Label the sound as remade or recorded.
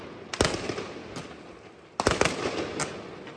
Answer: recorded